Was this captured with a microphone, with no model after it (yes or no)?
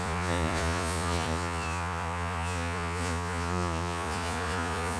no